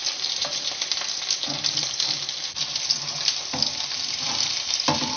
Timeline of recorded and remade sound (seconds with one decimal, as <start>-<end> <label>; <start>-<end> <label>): 0.0-5.2 recorded